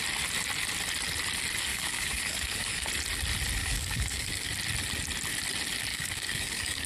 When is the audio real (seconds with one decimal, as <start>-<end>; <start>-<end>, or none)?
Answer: 0.0-1.7; 2.9-3.6; 4.5-5.9